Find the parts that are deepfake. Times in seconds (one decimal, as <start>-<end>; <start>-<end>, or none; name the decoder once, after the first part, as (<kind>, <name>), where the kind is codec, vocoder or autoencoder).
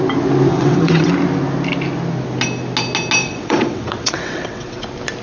0.5-1.1 (vocoder, WaveNeXt); 3.2-4.8